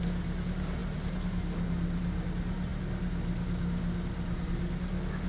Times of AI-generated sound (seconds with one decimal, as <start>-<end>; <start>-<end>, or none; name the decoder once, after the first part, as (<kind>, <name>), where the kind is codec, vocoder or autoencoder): none